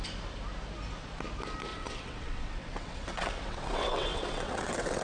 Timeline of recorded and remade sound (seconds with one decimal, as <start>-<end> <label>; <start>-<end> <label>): 0.0-1.7 recorded; 1.7-5.0 remade